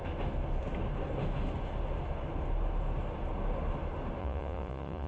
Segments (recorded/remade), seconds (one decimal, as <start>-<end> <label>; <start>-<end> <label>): 0.0-4.2 recorded; 4.2-5.1 remade